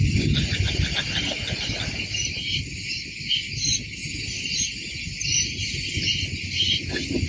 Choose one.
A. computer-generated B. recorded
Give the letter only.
B